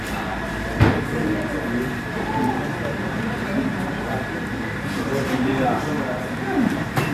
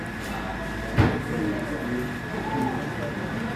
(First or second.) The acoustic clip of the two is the second